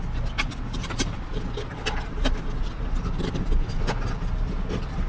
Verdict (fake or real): real